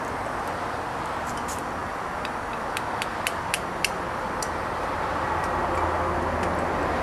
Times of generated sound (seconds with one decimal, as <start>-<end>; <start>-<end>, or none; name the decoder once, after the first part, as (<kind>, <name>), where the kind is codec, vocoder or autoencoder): none